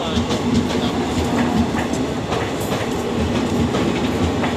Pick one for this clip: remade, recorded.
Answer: recorded